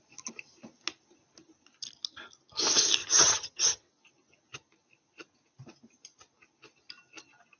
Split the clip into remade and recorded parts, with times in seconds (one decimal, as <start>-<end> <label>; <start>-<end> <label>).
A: 0.0-3.0 recorded; 3.0-3.9 remade; 3.9-7.6 recorded